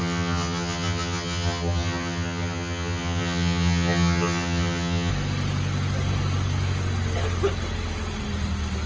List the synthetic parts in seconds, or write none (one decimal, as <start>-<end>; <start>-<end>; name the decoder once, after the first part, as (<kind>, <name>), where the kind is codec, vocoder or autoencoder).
0.0-5.1 (vocoder, HiFi-GAN)